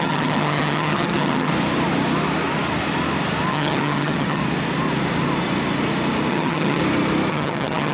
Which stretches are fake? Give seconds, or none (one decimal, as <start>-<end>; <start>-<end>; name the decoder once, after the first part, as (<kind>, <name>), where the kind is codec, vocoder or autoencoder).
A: 0.0-1.5 (vocoder, HiFi-GAN); 3.5-4.4; 6.3-6.8; 7.3-7.9